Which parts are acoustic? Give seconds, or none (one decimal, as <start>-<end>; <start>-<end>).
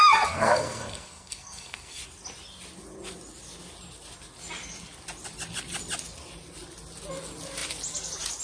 2.0-8.4